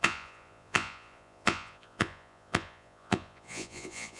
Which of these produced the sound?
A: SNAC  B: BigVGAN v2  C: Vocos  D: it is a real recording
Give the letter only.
C